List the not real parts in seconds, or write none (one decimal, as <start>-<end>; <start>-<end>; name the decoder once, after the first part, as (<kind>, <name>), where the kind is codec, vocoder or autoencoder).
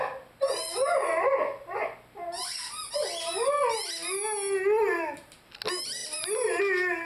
6.0-6.6 (vocoder, BigVGAN v2)